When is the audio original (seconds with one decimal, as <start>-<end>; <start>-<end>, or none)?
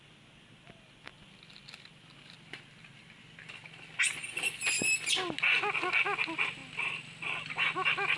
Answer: 0.0-8.2